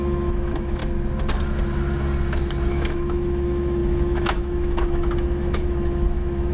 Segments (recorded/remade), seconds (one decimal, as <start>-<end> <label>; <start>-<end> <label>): 0.0-0.8 remade; 0.8-2.7 recorded; 2.7-6.5 remade